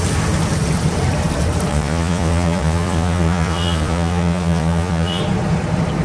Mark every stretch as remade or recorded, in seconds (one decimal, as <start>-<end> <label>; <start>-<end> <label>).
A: 0.0-1.7 recorded; 1.7-5.2 remade; 5.2-6.0 recorded